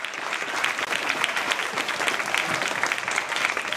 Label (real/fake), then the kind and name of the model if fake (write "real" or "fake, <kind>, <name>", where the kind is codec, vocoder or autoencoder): real